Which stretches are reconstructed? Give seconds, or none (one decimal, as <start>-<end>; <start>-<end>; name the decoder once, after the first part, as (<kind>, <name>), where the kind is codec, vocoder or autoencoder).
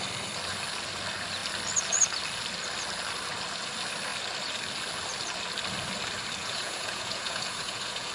6.4-8.1 (vocoder, Vocos)